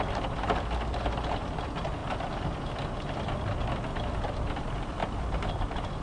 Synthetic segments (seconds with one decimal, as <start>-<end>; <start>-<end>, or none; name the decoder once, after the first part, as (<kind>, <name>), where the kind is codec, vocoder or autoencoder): none